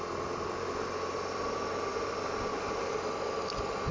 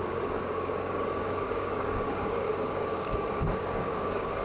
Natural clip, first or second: first